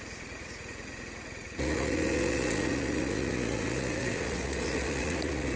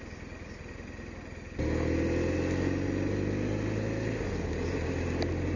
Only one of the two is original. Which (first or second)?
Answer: second